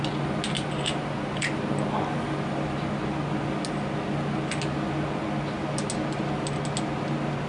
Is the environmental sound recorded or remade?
recorded